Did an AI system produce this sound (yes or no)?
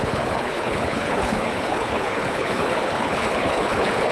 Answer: yes